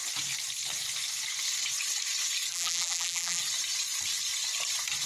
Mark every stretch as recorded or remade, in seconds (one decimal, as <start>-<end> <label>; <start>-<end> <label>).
0.0-2.5 recorded; 2.5-3.4 remade; 3.4-5.1 recorded